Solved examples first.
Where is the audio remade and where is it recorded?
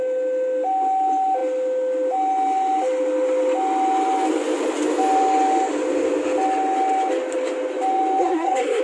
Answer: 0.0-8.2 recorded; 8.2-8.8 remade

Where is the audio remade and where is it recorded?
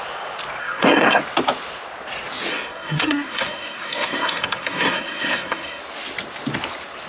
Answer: 0.0-0.6 recorded; 0.6-1.2 remade; 1.2-2.5 recorded; 2.5-5.8 remade; 5.8-7.1 recorded